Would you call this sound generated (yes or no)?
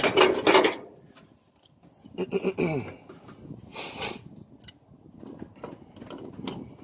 no